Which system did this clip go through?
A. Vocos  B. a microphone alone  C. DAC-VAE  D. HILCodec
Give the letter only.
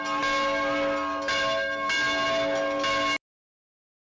B